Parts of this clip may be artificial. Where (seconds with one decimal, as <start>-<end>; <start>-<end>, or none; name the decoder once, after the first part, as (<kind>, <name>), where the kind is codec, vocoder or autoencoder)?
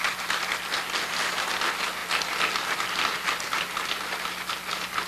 none